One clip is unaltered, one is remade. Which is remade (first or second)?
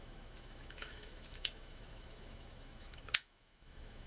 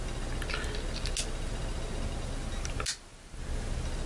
first